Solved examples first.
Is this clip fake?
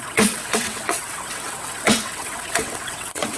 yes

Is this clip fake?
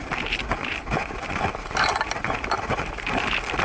no